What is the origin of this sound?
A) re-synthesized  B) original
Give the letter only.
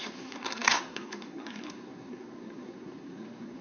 A